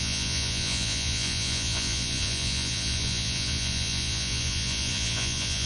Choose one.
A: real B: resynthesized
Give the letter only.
B